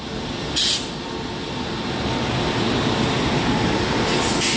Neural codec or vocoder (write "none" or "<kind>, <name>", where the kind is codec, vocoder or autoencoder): none